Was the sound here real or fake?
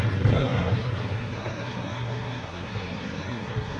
fake